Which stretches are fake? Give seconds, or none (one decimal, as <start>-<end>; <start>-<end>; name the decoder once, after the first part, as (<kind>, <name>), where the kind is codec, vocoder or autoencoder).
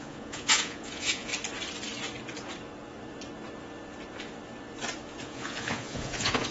0.0-1.3 (vocoder, Vocos); 5.2-6.5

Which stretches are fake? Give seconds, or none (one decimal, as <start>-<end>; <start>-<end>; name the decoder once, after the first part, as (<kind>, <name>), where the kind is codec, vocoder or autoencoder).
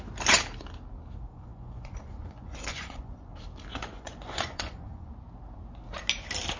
1.3-3.3 (vocoder, Vocos); 3.7-5.1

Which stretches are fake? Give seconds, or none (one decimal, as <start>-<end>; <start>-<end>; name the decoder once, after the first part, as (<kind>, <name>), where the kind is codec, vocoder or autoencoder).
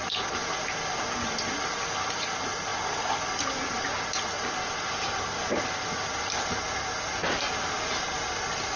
none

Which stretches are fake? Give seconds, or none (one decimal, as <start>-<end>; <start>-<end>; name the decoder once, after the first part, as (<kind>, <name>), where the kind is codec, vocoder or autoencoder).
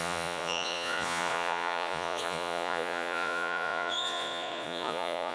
0.0-5.3 (vocoder, Vocos)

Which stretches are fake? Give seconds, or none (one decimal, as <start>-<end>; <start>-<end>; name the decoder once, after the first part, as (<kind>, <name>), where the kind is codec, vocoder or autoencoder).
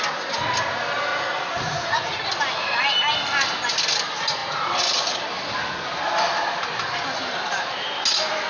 1.1-2.2 (vocoder, Vocos)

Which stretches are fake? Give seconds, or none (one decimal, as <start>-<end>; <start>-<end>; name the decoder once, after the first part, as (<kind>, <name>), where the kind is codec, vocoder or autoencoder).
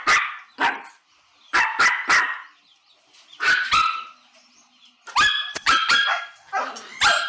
5.6-6.1 (vocoder, Vocos)